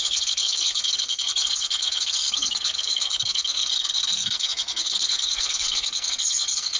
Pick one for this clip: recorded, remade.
remade